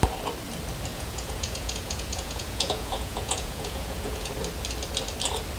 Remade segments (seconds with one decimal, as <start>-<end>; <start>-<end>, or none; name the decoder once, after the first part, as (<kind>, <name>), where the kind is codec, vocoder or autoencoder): 0.9-4.3 (vocoder, Vocos)